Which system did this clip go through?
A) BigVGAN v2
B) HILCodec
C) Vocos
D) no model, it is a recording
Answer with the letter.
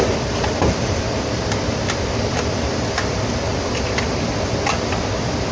D